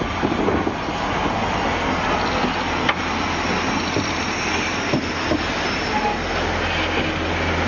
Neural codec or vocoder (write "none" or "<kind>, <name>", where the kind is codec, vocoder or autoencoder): none